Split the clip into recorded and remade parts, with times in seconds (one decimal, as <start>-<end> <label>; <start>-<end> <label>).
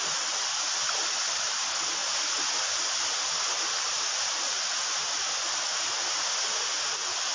0.0-7.3 recorded